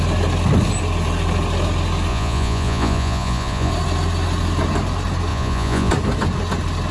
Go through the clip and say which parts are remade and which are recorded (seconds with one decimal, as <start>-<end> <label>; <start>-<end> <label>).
0.0-2.1 recorded; 2.1-3.7 remade; 3.7-5.3 recorded; 5.3-5.9 remade; 5.9-6.9 recorded